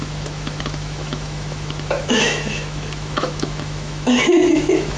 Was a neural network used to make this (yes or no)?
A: yes